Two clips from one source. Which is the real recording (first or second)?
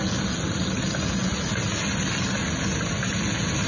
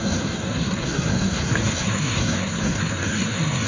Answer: first